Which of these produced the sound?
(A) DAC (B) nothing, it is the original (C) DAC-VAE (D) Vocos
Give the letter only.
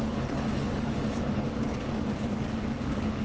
A